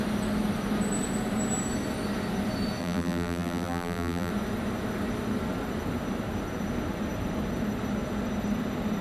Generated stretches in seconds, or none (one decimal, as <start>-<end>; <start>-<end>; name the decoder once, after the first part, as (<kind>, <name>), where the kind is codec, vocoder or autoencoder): 2.8-4.3 (vocoder, BigVGAN v2)